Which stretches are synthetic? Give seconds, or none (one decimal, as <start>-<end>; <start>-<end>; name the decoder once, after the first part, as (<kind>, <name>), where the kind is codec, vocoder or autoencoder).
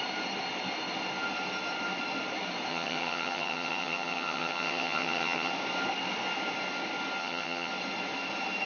2.7-5.5 (vocoder, HiFi-GAN); 7.2-7.7